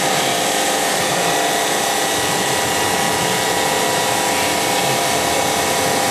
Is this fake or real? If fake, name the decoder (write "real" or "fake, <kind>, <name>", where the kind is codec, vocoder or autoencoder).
real